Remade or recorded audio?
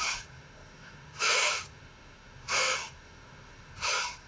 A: remade